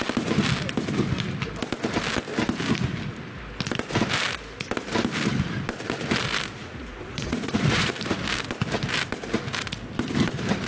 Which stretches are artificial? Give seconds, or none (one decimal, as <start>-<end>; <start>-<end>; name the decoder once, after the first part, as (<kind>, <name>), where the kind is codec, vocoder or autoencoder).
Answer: 6.6-7.9 (vocoder, Vocos)